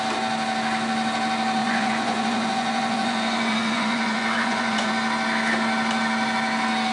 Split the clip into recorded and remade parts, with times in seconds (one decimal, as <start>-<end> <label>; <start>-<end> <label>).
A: 0.0-1.6 recorded; 1.6-4.9 remade; 4.9-6.9 recorded